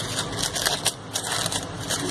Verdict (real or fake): real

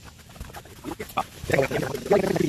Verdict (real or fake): real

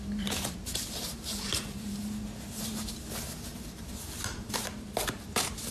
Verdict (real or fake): fake